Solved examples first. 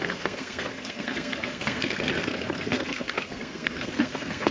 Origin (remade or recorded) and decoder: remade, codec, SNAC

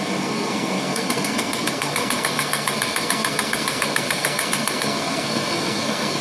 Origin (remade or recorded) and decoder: remade, codec, SNAC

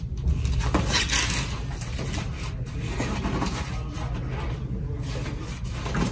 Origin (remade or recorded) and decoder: recorded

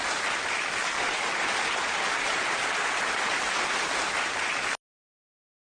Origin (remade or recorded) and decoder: recorded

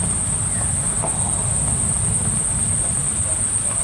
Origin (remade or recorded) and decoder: recorded